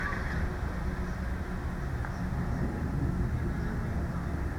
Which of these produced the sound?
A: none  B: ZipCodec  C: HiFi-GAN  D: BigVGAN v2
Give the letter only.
A